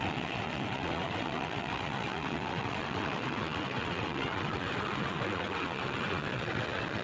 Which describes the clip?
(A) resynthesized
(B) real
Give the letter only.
A